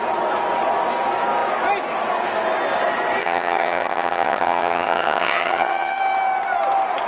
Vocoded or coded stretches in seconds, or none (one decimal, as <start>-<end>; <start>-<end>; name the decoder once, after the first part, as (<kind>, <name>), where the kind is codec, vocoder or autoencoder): 3.2-6.0 (vocoder, HiFi-GAN)